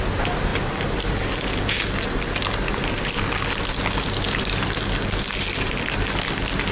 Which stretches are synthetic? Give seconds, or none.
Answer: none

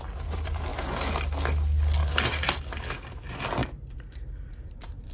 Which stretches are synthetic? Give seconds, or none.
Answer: 0.7-1.2; 2.0-2.6; 3.6-5.1

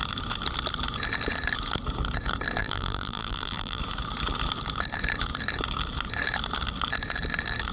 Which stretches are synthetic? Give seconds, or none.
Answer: 2.6-3.8